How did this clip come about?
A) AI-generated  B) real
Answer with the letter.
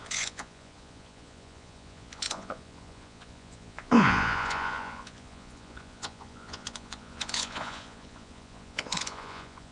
A